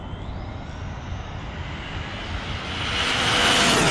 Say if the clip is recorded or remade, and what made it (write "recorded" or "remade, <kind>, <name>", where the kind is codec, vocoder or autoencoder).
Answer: recorded